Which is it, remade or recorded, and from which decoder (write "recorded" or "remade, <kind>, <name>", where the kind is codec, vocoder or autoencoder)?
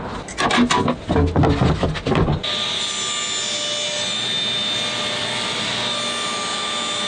recorded